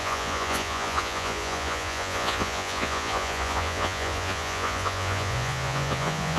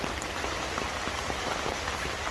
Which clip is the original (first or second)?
second